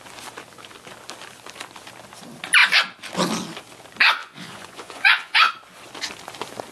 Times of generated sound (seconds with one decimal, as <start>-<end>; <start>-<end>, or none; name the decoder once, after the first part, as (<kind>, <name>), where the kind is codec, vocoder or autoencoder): 4.2-5.5 (vocoder, Vocos)